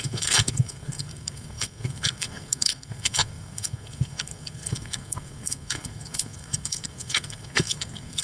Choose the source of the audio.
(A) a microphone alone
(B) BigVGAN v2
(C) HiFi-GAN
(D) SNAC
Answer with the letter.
D